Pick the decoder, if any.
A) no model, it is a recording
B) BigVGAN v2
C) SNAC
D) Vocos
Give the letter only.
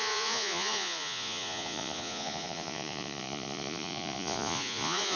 D